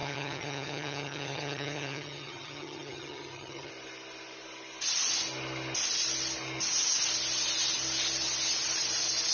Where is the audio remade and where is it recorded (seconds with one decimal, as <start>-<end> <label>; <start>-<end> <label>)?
0.0-3.7 remade; 3.7-9.3 recorded